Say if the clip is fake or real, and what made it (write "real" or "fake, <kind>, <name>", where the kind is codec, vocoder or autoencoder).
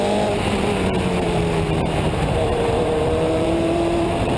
fake, vocoder, BigVGAN v2